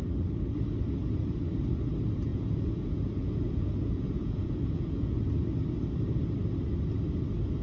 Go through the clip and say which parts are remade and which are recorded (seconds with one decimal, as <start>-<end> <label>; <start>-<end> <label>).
0.0-2.3 recorded; 2.3-5.2 remade; 5.2-7.6 recorded